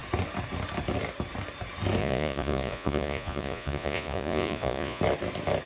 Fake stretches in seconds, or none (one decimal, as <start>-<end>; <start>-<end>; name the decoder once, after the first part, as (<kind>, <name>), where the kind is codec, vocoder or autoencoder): 2.0-5.0 (vocoder, Vocos)